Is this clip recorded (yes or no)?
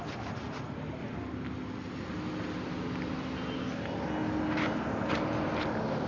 yes